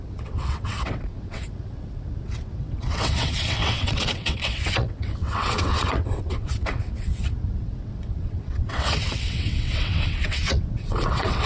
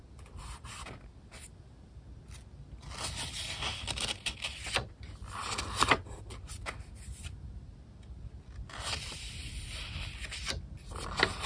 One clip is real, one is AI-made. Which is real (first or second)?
second